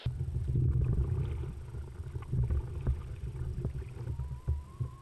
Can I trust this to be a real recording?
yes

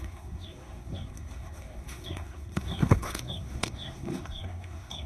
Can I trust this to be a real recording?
no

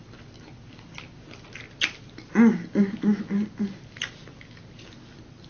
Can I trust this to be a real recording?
yes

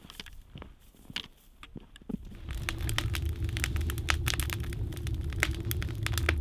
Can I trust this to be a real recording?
yes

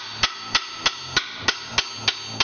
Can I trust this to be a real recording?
yes